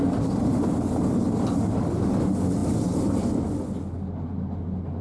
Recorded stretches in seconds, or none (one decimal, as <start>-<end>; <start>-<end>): 0.0-5.0